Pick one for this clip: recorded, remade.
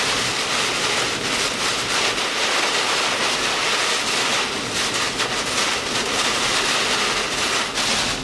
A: recorded